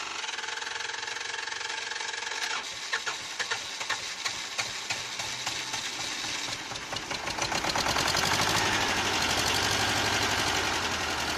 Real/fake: real